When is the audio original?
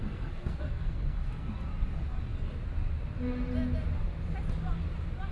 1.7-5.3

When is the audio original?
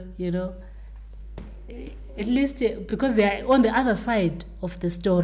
0.0-1.2; 2.2-5.2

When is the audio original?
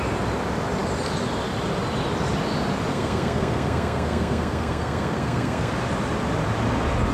0.0-2.9; 5.7-7.1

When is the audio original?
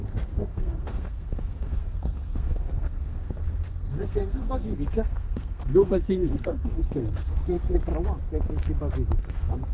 7.9-9.2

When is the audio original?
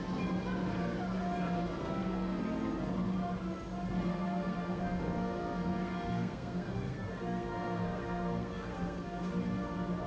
0.0-1.8; 2.4-4.1; 9.3-10.1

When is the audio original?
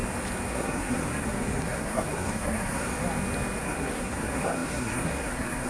0.0-0.5; 2.9-3.6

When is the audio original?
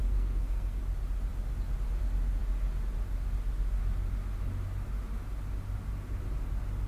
0.8-6.9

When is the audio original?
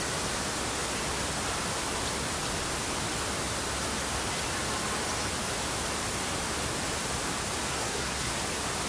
0.0-7.7; 8.3-8.9